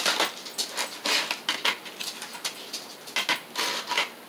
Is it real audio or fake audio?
real